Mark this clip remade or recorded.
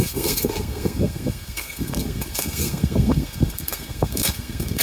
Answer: remade